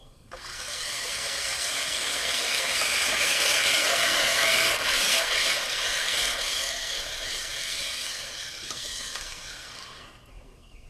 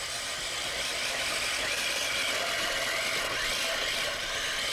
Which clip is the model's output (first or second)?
first